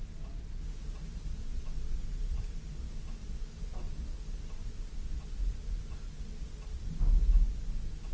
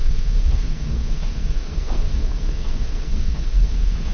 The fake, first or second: second